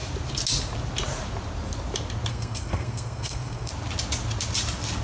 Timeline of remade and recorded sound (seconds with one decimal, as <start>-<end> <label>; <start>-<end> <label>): 0.0-2.3 recorded; 2.3-3.7 remade; 3.7-5.0 recorded